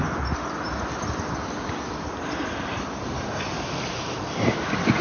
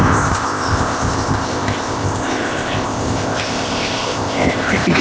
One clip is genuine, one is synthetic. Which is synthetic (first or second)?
second